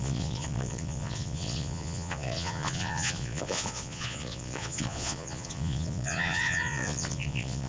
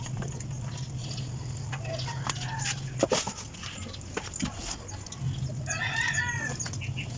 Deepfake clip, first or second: first